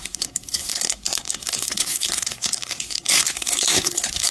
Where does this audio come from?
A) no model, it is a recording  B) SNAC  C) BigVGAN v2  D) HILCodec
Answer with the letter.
B